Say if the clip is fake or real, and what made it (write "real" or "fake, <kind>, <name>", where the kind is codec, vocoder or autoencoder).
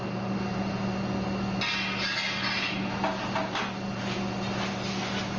real